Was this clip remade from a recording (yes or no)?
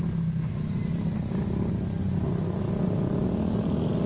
no